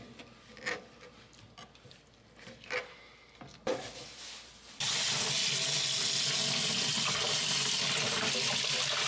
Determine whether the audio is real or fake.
real